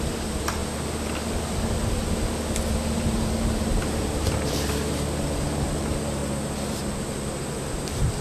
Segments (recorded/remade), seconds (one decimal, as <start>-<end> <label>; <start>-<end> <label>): 0.0-0.6 remade; 0.6-2.7 recorded; 2.7-6.2 remade; 6.2-6.7 recorded; 6.7-8.2 remade